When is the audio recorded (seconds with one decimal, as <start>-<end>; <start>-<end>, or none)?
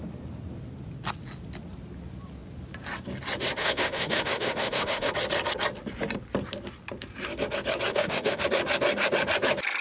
0.0-3.6; 5.1-7.9; 8.4-9.8